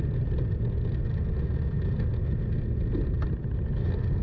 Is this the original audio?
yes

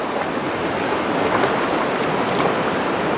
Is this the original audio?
yes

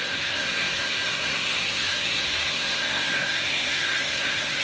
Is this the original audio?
no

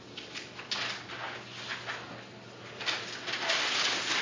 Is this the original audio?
yes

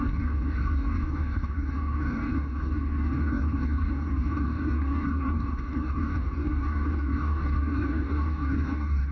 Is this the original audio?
no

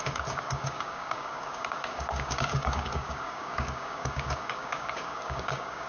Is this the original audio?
no